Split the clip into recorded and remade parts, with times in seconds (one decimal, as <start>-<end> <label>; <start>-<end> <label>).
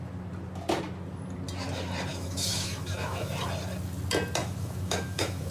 0.0-2.1 recorded; 2.1-3.3 remade; 3.3-4.4 recorded; 4.4-5.5 remade